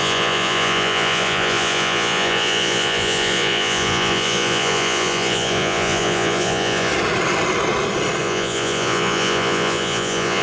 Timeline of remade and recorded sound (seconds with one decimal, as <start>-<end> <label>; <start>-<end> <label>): 0.0-6.9 remade; 6.9-8.2 recorded; 8.2-10.4 remade